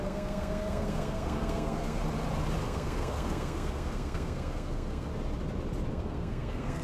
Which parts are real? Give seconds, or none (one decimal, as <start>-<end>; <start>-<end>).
2.0-2.6; 5.1-5.9